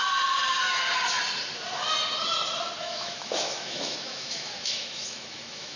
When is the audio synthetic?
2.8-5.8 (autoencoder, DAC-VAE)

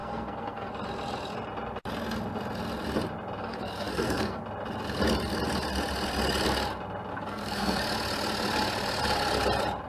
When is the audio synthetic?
0.0-0.7 (codec, SNAC); 3.4-4.4; 7.1-7.8

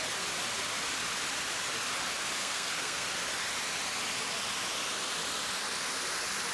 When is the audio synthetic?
2.4-3.1 (codec, SNAC)

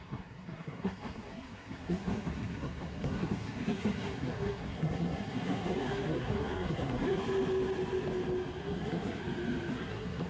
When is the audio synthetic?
0.0-7.2 (codec, SNAC); 8.6-9.2; 9.7-10.3